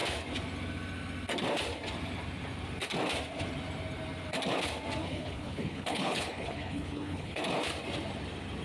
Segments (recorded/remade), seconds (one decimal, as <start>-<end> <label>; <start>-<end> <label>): 0.0-5.0 recorded; 5.0-7.4 remade; 7.4-8.6 recorded